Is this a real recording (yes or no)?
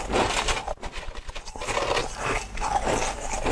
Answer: yes